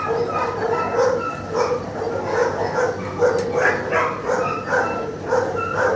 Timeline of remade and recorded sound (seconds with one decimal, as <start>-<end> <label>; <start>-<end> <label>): 0.0-6.0 recorded